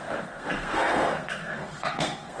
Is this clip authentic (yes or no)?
no